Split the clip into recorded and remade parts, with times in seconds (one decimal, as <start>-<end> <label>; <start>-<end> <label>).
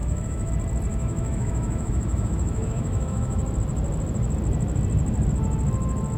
0.0-0.5 remade; 0.5-0.9 recorded; 0.9-3.4 remade; 3.4-6.2 recorded